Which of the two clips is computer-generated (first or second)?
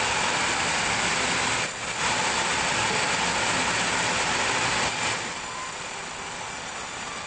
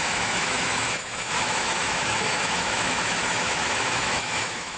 second